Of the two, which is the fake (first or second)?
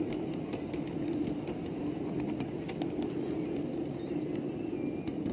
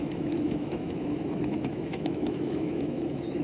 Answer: second